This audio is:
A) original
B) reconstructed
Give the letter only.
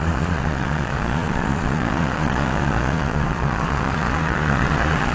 B